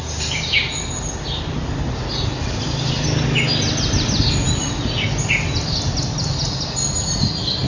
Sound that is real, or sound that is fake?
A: real